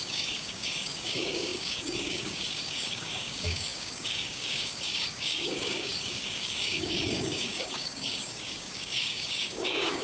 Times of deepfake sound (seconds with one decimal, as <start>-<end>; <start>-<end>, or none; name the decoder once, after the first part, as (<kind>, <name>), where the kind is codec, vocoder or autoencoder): 0.0-10.0 (codec, DAC)